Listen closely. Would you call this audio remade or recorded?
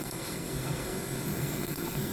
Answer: remade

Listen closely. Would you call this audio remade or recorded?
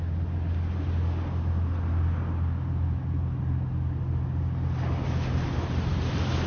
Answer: recorded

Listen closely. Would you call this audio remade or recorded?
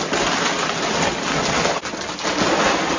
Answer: recorded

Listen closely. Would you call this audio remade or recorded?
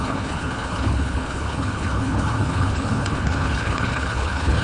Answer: remade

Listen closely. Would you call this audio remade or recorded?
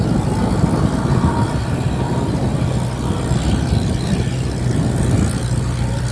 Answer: recorded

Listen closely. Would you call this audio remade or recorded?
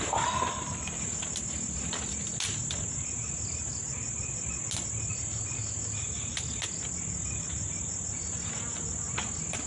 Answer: recorded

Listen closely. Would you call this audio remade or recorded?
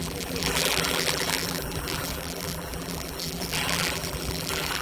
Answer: remade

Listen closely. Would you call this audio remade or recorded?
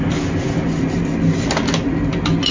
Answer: recorded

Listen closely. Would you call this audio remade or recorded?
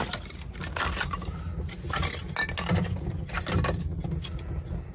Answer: recorded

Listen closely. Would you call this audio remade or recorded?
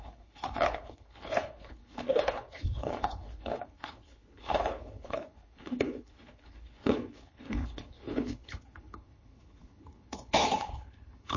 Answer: remade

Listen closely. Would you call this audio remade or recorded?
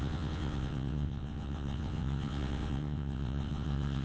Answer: remade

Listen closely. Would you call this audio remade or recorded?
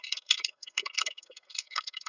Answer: remade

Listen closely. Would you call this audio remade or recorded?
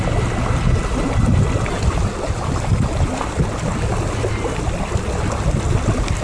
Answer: recorded